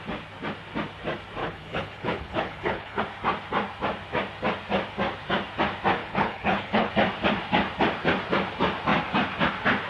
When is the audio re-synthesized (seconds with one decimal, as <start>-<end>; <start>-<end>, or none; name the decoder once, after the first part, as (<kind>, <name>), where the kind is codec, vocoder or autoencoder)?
1.4-3.0 (codec, HILCodec); 6.0-6.9

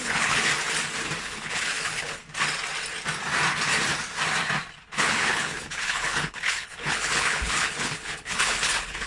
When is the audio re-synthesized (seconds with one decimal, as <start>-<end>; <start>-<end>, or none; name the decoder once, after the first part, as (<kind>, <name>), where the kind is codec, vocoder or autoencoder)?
0.0-0.5 (codec, HILCodec); 1.2-2.2; 4.9-9.1

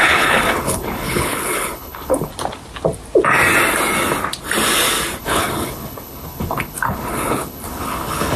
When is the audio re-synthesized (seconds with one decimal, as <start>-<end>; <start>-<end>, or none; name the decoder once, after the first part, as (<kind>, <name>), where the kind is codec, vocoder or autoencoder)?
0.0-2.3 (codec, HILCodec); 5.2-8.4

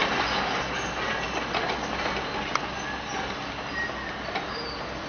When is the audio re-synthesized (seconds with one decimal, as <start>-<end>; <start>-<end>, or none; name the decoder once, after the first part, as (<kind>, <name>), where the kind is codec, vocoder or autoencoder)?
none